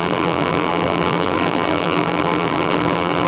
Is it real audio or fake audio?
fake